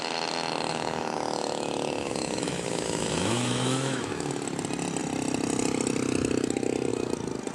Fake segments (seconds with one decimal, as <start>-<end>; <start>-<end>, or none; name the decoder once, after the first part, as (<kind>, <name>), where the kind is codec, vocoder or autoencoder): 0.7-4.3 (autoencoder, DAC-VAE)